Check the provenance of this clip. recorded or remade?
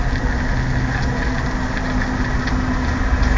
recorded